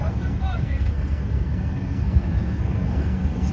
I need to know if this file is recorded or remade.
remade